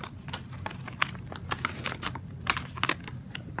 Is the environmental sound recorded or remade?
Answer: recorded